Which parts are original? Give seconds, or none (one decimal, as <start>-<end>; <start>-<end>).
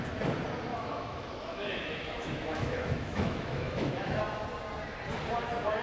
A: 0.0-0.7; 4.2-5.8